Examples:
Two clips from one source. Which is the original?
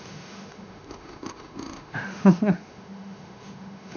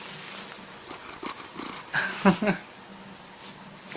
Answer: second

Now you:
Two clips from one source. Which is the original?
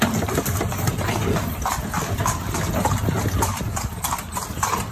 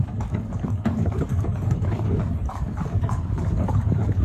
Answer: first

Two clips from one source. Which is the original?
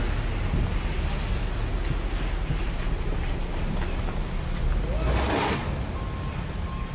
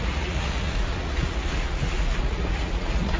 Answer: first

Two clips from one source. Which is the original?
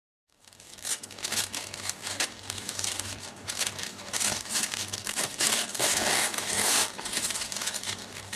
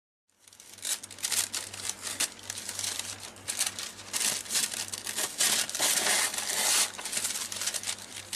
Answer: second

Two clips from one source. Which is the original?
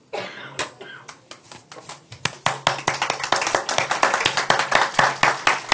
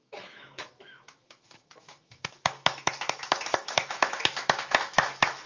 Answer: first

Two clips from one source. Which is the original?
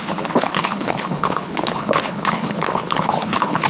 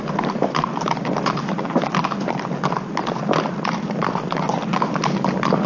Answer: second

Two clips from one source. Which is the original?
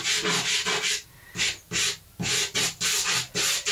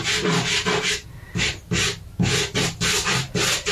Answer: first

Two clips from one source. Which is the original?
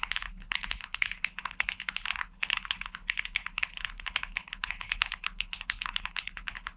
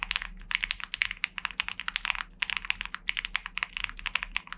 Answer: second